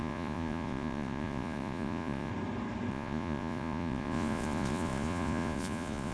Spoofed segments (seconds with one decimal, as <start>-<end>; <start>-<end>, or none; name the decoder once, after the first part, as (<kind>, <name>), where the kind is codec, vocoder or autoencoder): 0.0-2.3 (vocoder, Vocos); 2.9-6.1